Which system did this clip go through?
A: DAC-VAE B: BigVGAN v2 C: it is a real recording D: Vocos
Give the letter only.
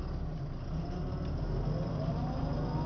C